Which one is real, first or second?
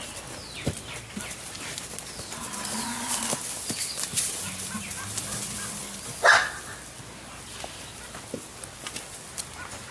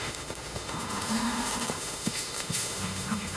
first